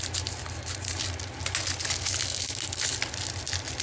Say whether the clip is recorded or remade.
recorded